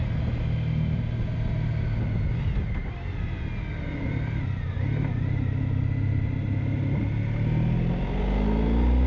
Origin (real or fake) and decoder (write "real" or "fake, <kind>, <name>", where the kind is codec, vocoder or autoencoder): real